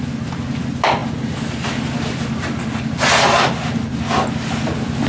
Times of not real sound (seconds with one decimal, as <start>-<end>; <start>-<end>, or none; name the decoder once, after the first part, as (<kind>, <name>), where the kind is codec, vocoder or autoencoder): none

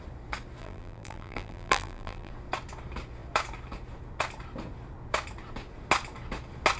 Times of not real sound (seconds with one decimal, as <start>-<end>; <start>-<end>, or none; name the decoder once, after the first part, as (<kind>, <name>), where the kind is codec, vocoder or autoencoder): 0.6-2.3 (vocoder, BigVGAN v2)

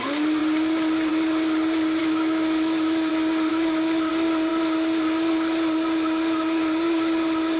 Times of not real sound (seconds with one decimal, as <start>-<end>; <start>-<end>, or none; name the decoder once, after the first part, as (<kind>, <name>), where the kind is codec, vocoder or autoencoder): 2.0-3.1 (autoencoder, DAC-VAE); 3.5-4.1

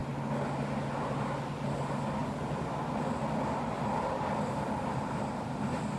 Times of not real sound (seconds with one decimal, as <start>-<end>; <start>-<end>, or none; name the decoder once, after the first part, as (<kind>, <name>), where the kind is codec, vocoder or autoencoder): none